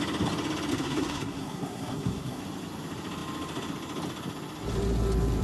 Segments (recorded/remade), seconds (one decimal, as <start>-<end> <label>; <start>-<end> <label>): 0.0-0.7 recorded; 0.7-2.4 remade; 2.4-5.4 recorded